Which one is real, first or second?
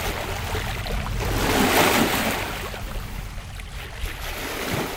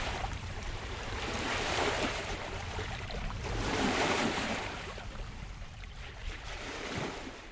first